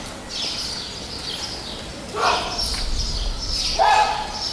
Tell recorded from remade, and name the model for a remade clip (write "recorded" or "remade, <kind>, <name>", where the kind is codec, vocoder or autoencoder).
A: recorded